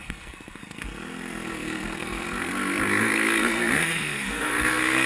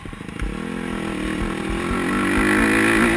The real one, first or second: second